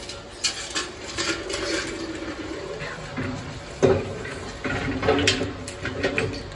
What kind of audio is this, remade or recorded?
recorded